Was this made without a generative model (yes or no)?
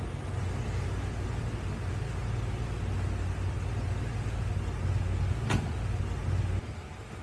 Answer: yes